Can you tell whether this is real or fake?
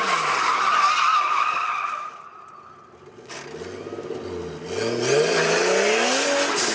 real